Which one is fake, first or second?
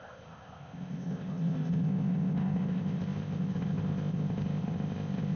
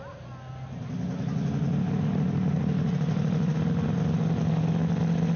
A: first